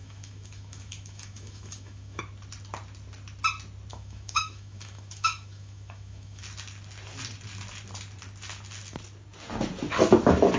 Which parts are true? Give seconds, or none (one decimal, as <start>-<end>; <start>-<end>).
2.2-3.9; 6.4-10.6